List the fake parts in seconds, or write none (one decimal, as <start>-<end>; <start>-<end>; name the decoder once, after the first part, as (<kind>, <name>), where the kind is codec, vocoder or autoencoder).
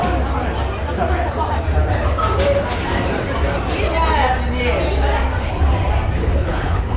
6.2-7.0 (codec, HILCodec)